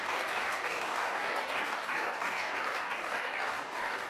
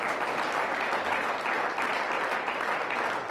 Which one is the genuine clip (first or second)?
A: second